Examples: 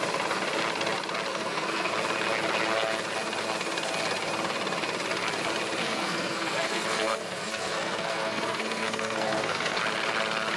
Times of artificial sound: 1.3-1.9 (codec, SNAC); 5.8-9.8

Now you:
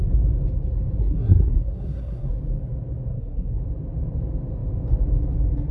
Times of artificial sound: 1.0-2.3 (codec, SNAC); 3.1-3.6

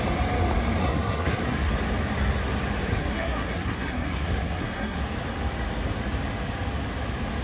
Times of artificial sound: 0.8-1.7 (codec, SNAC); 2.9-5.0

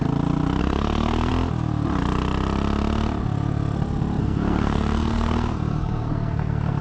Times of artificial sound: 0.6-1.3 (codec, SNAC); 4.2-6.8

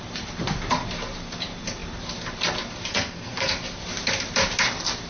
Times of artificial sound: 2.9-3.5 (codec, SNAC)

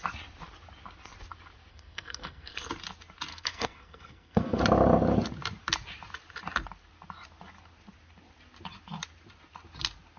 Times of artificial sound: 1.7-2.7 (codec, SNAC); 3.3-4.6

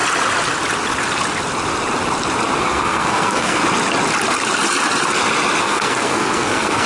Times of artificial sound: 2.6-3.6 (codec, SNAC); 5.6-6.9

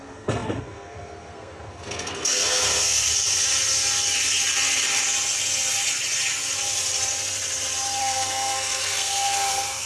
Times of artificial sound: 0.0-3.1 (codec, SNAC); 8.0-9.9